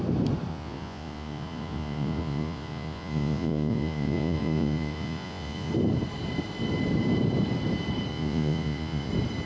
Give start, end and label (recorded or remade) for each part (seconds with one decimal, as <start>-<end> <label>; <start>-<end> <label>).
0.0-0.5 recorded; 0.5-5.7 remade; 5.7-8.1 recorded; 8.1-9.1 remade; 9.1-9.5 recorded